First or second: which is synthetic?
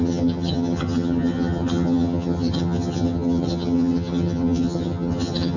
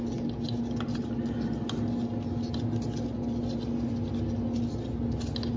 first